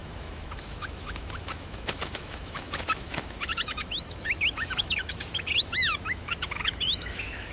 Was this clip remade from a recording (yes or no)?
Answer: yes